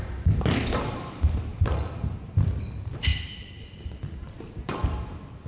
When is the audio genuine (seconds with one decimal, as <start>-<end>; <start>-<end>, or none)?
0.0-5.5